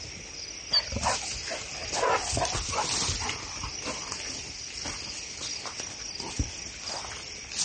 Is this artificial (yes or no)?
no